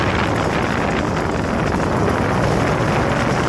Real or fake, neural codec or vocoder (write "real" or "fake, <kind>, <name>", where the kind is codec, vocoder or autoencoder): real